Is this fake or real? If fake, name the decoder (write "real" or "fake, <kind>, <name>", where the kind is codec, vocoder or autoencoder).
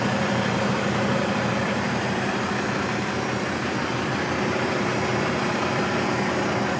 real